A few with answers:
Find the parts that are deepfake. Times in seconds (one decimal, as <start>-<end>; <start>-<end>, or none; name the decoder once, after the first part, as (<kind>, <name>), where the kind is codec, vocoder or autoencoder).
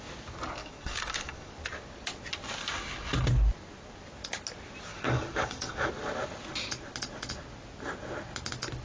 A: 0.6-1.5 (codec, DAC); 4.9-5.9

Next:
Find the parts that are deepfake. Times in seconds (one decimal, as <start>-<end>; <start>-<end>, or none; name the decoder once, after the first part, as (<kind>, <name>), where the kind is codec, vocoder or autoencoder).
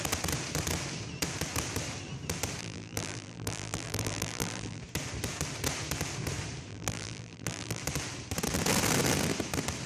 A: 2.6-4.8 (vocoder, BigVGAN v2); 6.7-7.8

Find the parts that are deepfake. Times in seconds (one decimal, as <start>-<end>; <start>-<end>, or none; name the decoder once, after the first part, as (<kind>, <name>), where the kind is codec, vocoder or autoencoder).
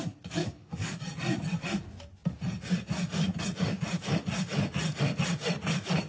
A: 0.4-1.0 (codec, DAC)